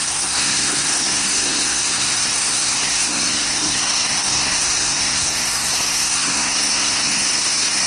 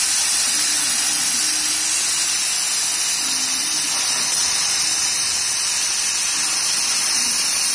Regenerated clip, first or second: first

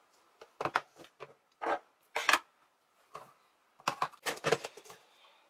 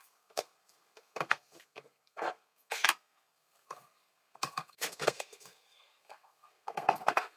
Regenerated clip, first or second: second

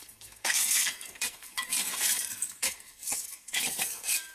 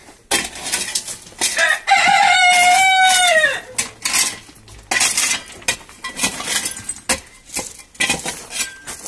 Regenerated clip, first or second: first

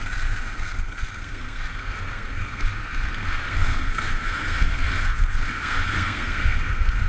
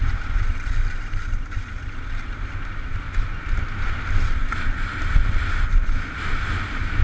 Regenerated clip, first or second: first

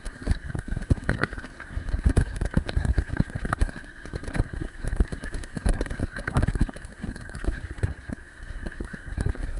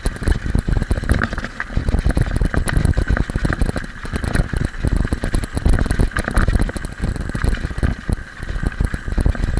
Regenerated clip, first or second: first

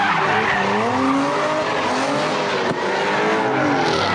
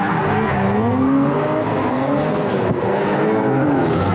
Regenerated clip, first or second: second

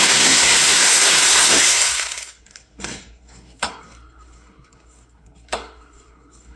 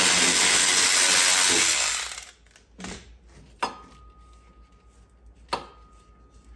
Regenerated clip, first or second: first